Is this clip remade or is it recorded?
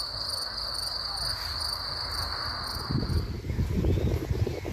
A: recorded